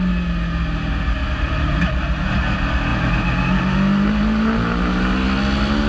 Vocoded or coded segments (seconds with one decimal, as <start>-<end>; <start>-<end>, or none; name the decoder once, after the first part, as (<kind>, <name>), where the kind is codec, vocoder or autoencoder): none

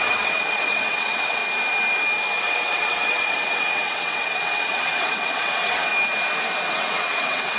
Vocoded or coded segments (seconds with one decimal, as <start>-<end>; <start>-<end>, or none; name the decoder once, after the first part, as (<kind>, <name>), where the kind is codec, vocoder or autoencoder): 0.0-1.4 (vocoder, WaveNeXt); 2.4-5.9; 6.7-7.6

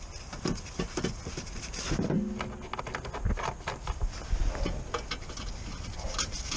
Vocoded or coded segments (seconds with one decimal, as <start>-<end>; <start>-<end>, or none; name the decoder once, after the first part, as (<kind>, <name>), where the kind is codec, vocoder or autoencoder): none

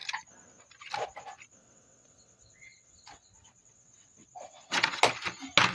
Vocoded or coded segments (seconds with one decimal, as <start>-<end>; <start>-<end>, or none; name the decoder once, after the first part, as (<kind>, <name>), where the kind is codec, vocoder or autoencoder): 1.6-5.0 (vocoder, WaveNeXt)